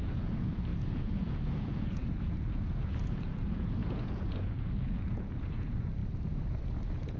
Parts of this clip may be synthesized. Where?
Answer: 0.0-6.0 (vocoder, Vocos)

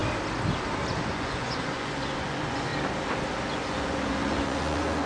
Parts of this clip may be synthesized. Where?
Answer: 1.1-2.7 (vocoder, Vocos); 3.5-5.1

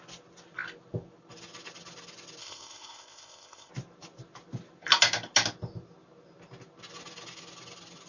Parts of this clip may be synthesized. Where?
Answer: 2.4-3.7 (codec, ZipCodec)

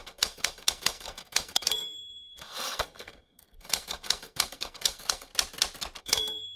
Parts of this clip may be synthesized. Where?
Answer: 0.0-5.3 (codec, SNAC); 6.0-6.6